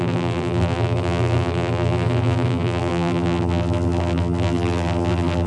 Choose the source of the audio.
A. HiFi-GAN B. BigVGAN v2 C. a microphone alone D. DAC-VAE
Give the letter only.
B